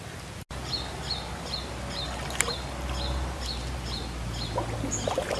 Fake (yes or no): no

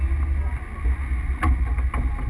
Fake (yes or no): no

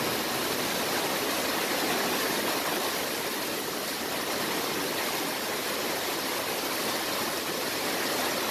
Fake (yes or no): no